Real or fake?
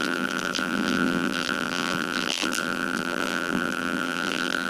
fake